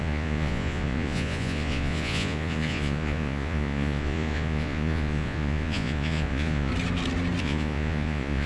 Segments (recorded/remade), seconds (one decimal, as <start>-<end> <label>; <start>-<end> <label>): 0.0-6.7 remade; 6.7-7.4 recorded; 7.4-8.5 remade

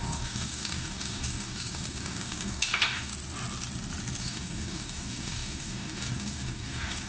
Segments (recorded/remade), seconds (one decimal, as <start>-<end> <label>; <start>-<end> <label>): 0.0-3.1 remade; 3.1-4.2 recorded; 4.2-7.1 remade

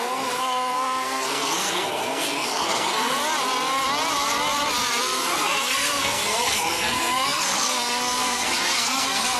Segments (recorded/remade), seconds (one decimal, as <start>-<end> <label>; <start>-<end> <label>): 0.0-3.2 remade; 3.2-5.0 recorded; 5.0-9.4 remade